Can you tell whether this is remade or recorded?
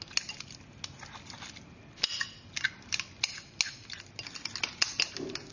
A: recorded